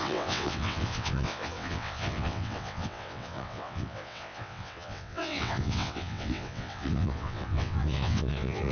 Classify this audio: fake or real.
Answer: fake